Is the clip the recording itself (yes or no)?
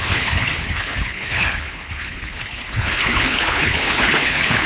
no